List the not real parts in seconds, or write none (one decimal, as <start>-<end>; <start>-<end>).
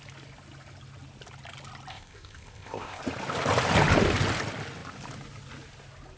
1.9-3.0